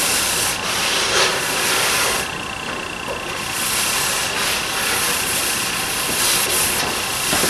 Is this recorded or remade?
recorded